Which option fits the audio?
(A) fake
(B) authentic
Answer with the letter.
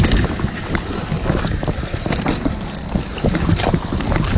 B